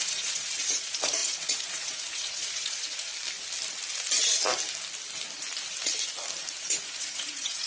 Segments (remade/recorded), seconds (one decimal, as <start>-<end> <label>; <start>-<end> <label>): 0.0-3.1 remade; 3.1-6.6 recorded; 6.6-7.7 remade

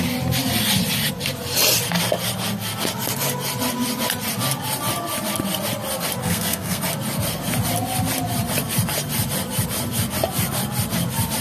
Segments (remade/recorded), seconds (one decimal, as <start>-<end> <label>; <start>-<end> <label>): 0.0-6.2 recorded; 6.2-6.9 remade; 6.9-11.4 recorded